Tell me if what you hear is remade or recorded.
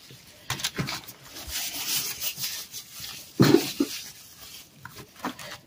recorded